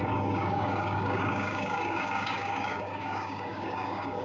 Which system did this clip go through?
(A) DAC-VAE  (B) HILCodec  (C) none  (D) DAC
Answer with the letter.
D